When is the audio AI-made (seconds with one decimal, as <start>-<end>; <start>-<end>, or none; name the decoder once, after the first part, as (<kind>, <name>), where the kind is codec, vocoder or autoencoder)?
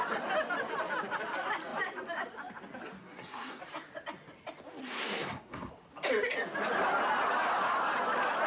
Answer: 3.0-3.6 (codec, SNAC); 4.8-5.7